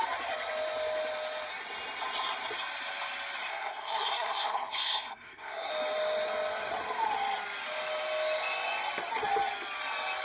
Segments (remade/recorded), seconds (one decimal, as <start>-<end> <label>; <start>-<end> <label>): 0.0-3.5 recorded; 3.5-5.7 remade; 5.7-10.2 recorded